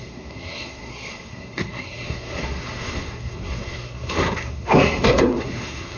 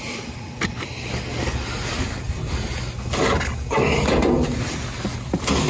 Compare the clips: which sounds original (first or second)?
second